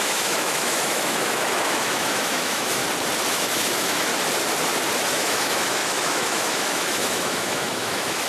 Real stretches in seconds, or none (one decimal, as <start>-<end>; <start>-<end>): 2.8-3.3; 4.1-5.1